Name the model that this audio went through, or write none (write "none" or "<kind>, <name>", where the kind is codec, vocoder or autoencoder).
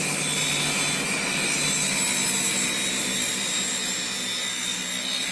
none